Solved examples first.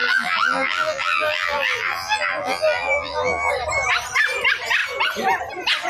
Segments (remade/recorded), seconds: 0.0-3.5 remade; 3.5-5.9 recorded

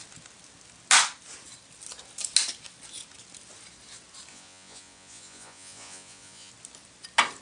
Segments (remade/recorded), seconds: 0.0-4.3 recorded; 4.3-6.5 remade; 6.5-7.4 recorded